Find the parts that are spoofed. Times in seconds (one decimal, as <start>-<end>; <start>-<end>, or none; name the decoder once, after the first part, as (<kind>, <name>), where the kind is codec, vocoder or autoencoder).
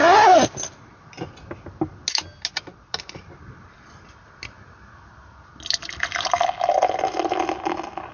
none